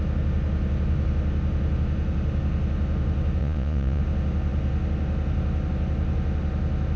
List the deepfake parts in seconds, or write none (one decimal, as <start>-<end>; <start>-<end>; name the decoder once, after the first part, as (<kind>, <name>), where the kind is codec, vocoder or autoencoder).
3.4-4.0 (vocoder, Vocos)